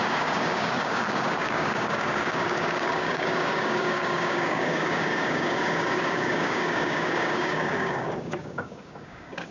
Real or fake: fake